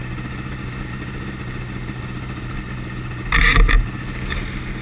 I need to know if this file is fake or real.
real